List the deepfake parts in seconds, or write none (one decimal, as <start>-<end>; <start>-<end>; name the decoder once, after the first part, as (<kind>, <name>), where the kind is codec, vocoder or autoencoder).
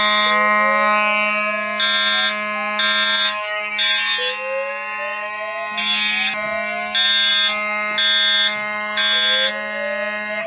none